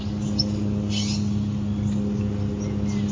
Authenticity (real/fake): real